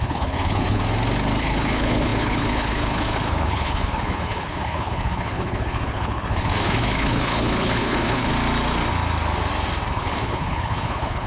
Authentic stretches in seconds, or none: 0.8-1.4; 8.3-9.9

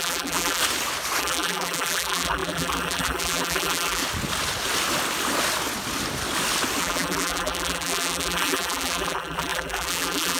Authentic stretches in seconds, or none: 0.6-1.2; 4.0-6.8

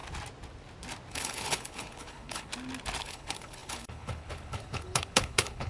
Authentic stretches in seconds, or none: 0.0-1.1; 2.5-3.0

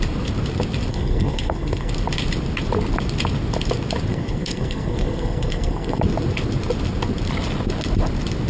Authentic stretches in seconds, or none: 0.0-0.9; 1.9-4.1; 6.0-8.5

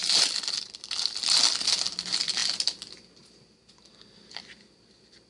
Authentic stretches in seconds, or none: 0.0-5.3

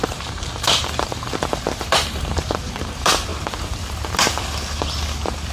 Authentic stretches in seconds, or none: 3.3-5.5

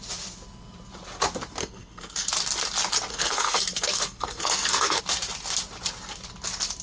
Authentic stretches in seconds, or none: 0.0-1.6; 2.3-3.1; 5.0-6.8